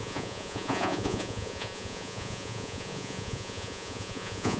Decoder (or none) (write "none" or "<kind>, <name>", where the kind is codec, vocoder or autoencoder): vocoder, Vocos